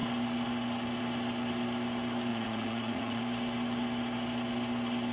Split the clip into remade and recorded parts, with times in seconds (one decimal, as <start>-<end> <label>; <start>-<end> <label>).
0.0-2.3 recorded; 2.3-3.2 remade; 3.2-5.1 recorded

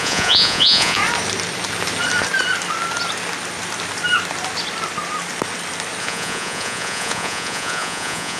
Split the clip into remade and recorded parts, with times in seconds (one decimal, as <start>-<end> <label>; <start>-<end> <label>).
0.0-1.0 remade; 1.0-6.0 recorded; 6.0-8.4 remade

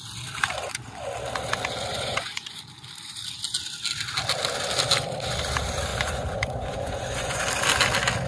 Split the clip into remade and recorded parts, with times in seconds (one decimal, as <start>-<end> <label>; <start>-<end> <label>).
0.0-1.9 recorded; 1.9-2.6 remade; 2.6-5.9 recorded; 5.9-7.4 remade; 7.4-8.3 recorded